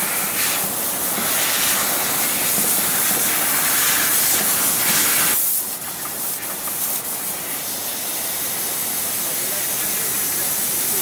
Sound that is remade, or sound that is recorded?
recorded